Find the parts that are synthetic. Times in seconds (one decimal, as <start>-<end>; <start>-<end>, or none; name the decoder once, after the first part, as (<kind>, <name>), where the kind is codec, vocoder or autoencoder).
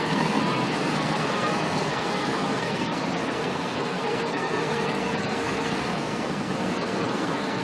0.0-7.6 (codec, SNAC)